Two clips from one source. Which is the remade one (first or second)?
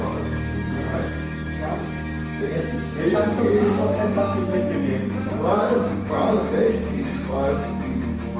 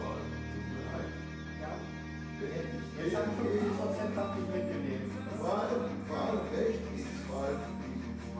first